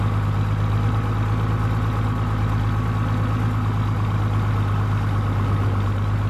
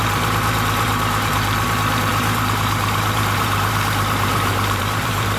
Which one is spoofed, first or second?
second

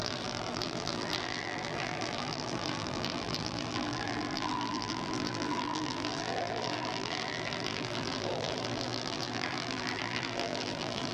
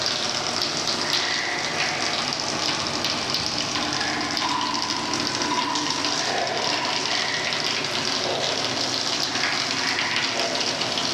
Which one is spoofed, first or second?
first